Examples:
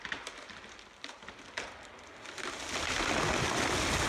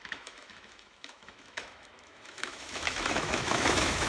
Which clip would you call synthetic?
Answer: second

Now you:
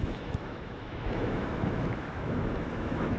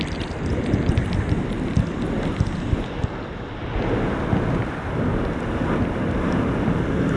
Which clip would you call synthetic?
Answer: first